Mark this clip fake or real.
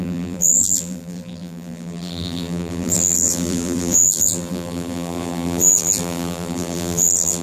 fake